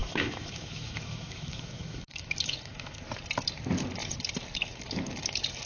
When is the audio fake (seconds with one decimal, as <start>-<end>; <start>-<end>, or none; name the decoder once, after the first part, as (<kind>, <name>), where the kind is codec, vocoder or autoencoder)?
0.0-3.0 (autoencoder, DAC-VAE)

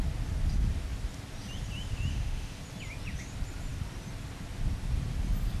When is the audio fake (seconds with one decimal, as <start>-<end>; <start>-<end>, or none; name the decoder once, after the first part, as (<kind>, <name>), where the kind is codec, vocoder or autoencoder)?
2.1-2.6 (autoencoder, DAC-VAE)

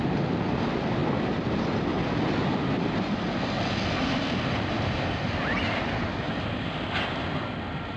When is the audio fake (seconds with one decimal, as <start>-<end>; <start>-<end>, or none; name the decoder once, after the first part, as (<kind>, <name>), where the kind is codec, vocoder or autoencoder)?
none

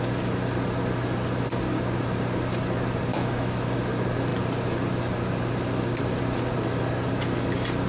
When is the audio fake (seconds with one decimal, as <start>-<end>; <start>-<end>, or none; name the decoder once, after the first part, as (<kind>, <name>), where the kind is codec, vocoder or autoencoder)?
3.1-3.8 (autoencoder, DAC-VAE)

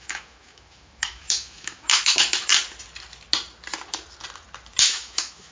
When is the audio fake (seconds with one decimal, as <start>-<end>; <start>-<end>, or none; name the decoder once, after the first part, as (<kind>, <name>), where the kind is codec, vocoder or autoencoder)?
0.0-2.5 (autoencoder, DAC-VAE); 4.8-5.5

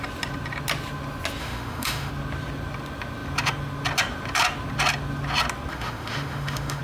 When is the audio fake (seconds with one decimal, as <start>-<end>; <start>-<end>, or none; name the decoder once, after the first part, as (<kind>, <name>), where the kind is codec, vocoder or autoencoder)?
1.4-2.1 (autoencoder, DAC-VAE); 5.7-6.8

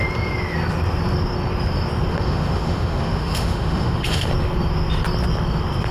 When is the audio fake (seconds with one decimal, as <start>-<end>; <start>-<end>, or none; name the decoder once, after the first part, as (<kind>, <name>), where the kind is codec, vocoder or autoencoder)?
2.1-4.3 (autoencoder, DAC-VAE)

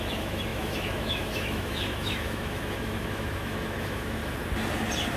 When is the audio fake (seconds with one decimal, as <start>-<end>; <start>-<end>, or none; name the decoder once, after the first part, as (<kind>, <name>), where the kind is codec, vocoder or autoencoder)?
0.0-4.2 (autoencoder, DAC-VAE)